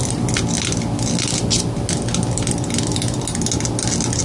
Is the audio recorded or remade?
recorded